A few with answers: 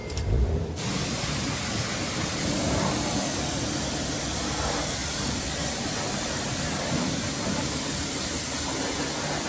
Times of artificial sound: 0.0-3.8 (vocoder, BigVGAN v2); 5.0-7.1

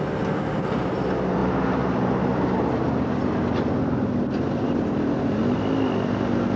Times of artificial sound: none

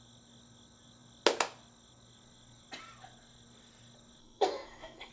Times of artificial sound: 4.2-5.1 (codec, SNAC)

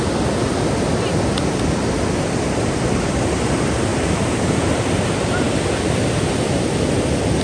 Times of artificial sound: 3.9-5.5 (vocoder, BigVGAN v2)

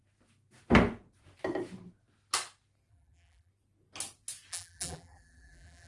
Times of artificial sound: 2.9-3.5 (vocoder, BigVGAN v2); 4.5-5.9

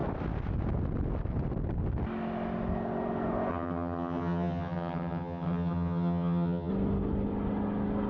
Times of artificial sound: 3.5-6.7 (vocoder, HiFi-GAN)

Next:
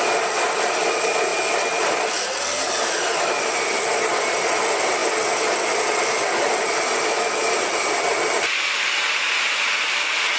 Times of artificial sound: none